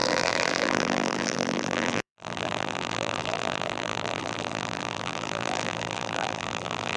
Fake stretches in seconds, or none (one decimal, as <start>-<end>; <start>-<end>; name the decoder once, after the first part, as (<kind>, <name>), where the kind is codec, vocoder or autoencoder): 0.0-7.0 (vocoder, BigVGAN v2)